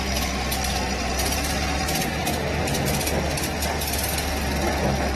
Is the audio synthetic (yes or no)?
no